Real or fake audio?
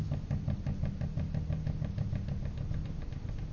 real